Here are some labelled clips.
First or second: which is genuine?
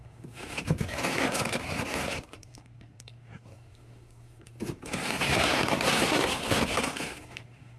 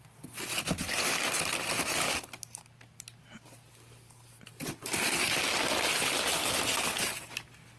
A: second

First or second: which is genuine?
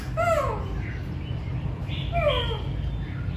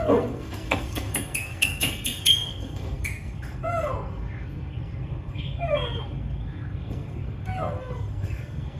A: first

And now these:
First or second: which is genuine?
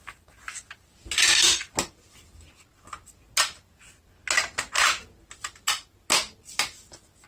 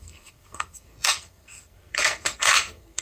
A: first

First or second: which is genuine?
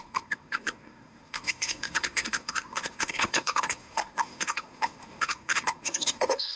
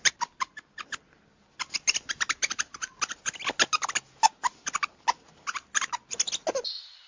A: second